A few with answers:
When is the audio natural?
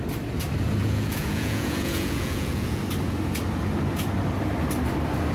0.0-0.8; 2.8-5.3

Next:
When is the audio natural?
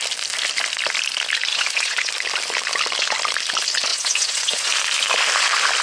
0.0-1.5; 2.1-3.9; 4.7-5.8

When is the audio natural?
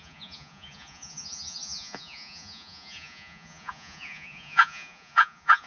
none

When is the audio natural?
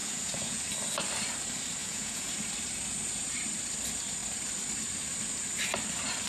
0.6-1.8; 2.3-6.3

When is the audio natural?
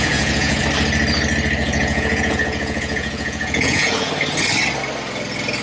0.6-1.6; 4.1-5.6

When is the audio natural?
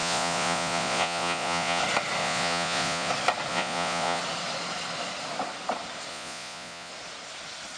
1.8-2.2; 3.1-3.5; 4.2-6.1; 6.9-7.8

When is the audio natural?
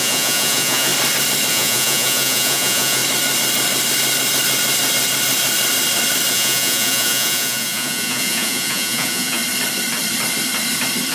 0.9-1.5; 3.0-6.3; 9.4-11.1